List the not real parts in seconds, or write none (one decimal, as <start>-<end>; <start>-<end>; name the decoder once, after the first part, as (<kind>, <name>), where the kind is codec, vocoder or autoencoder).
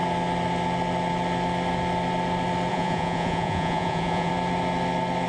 2.7-4.3 (vocoder, Vocos)